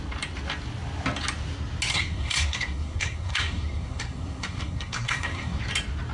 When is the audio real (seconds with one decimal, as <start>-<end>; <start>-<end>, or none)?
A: 0.0-1.9; 5.6-6.1